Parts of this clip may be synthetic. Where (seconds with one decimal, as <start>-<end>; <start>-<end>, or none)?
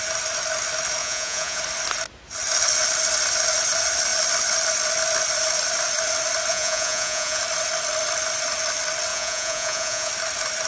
1.0-1.6; 6.5-7.4; 9.1-10.1